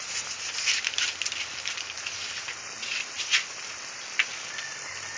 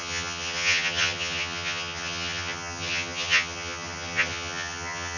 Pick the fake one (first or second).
second